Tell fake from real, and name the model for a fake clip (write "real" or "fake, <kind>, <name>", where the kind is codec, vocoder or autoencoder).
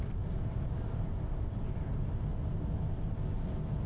real